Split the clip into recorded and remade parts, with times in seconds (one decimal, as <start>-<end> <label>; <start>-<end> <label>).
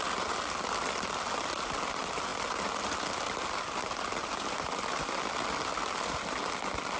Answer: 0.0-7.0 recorded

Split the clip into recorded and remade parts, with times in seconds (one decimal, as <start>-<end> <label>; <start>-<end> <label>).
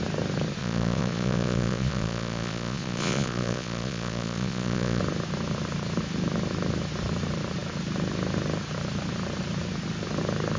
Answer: 0.0-0.6 recorded; 0.6-5.0 remade; 5.0-10.6 recorded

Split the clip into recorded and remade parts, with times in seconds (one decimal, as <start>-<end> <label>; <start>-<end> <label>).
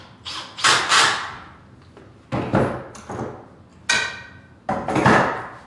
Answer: 0.0-5.7 recorded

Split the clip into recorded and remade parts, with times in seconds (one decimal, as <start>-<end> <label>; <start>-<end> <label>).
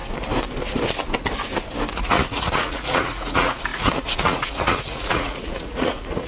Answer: 0.0-1.9 recorded; 1.9-6.3 remade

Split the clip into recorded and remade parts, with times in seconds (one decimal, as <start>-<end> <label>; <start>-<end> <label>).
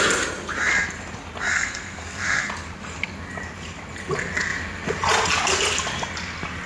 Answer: 0.0-1.5 recorded; 1.5-2.5 remade; 2.5-6.7 recorded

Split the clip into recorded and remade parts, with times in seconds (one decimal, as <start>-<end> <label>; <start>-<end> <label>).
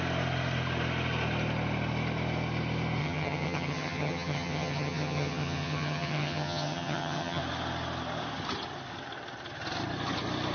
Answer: 0.0-3.0 recorded; 3.0-7.4 remade; 7.4-10.5 recorded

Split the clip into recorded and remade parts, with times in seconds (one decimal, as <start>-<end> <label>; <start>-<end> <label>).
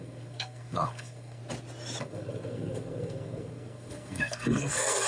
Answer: 0.0-1.4 remade; 1.4-2.0 recorded; 2.0-5.1 remade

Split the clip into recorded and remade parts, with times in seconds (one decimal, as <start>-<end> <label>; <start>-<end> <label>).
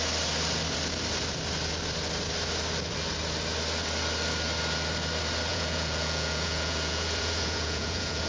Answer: 0.0-5.5 recorded; 5.5-8.3 remade